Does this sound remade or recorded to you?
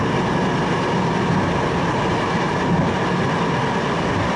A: recorded